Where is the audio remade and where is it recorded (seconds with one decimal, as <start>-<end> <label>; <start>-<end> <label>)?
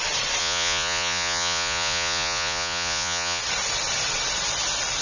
0.0-0.4 recorded; 0.4-3.4 remade; 3.4-5.0 recorded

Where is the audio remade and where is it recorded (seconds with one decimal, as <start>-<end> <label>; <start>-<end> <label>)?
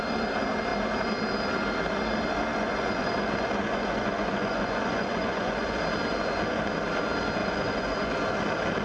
0.0-2.5 recorded; 2.5-5.8 remade; 5.8-7.4 recorded; 7.4-8.1 remade; 8.1-8.8 recorded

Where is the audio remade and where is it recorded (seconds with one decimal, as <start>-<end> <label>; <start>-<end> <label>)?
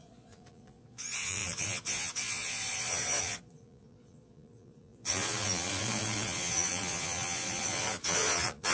0.0-8.7 remade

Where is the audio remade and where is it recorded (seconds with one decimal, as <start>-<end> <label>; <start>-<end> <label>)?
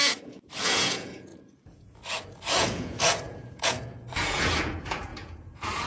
0.0-5.9 remade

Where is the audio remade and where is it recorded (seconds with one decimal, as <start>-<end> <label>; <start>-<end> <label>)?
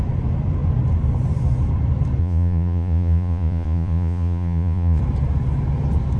0.0-2.2 recorded; 2.2-5.0 remade; 5.0-6.2 recorded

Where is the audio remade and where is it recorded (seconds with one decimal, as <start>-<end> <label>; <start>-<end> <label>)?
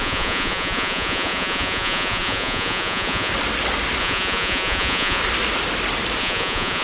0.0-3.3 remade; 3.3-4.0 recorded; 4.0-5.2 remade; 5.2-6.2 recorded; 6.2-6.8 remade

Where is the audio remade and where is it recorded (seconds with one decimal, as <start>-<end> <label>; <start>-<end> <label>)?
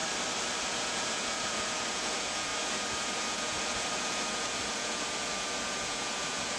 0.0-0.6 recorded; 0.6-6.6 remade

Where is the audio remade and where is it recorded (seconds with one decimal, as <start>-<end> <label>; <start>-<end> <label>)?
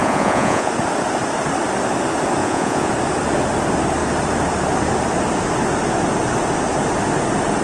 0.0-0.7 remade; 0.7-2.4 recorded; 2.4-2.9 remade; 2.9-7.6 recorded